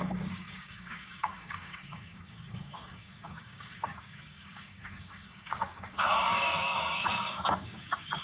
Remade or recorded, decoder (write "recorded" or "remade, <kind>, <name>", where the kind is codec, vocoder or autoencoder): remade, codec, DAC